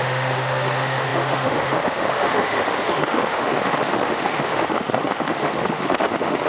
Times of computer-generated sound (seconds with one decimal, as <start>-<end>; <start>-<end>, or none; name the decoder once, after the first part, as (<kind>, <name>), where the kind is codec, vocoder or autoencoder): 0.0-6.5 (autoencoder, DAC-VAE)